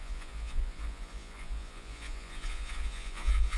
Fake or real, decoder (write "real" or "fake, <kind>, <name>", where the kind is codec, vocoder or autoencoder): fake, vocoder, Vocos